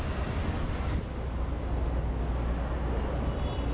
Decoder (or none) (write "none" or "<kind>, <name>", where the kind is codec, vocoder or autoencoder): none